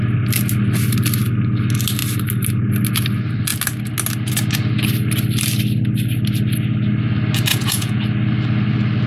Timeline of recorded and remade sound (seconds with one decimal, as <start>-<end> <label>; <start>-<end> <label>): 0.0-7.5 recorded; 7.5-8.0 remade; 8.0-9.1 recorded